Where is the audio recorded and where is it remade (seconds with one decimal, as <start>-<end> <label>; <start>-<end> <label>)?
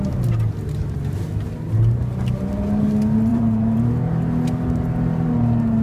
0.0-3.3 recorded; 3.3-4.0 remade; 4.0-5.8 recorded